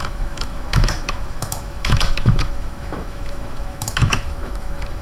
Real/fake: fake